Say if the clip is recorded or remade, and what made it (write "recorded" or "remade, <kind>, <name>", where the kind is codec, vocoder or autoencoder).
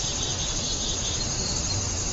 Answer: remade, vocoder, BigVGAN v2